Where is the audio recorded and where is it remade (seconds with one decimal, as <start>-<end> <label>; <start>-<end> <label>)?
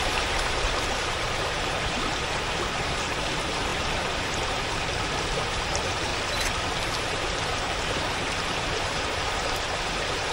0.0-6.1 remade; 6.1-7.0 recorded; 7.0-10.3 remade